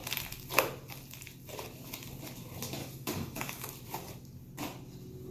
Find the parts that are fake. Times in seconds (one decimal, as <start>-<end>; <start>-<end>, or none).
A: 2.8-3.7